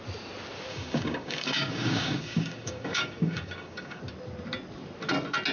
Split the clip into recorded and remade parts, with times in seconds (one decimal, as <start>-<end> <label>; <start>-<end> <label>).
0.0-0.7 recorded; 0.7-4.0 remade; 4.0-5.5 recorded